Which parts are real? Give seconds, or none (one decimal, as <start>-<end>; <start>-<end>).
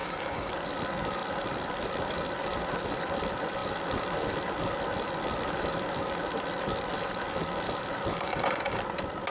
0.5-8.1; 8.8-9.3